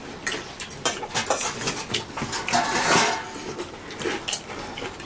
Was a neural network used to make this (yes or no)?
no